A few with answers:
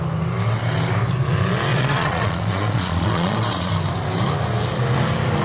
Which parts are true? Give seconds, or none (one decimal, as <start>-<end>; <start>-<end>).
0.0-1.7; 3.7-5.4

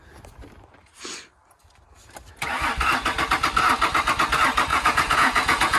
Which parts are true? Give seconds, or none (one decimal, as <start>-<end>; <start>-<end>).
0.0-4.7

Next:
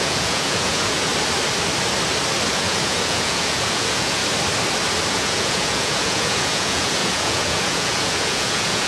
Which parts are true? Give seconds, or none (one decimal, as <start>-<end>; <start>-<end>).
1.1-2.5; 4.2-5.1